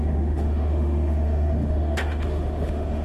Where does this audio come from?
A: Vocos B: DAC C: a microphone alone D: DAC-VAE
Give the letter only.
D